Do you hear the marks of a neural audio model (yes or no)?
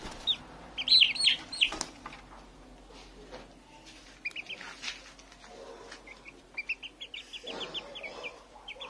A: no